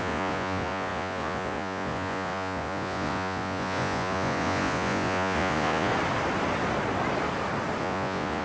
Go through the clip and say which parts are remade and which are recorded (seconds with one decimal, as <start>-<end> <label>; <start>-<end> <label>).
0.0-5.9 remade; 5.9-7.8 recorded; 7.8-8.4 remade